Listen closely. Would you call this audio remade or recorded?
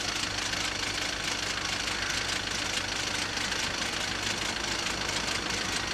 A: recorded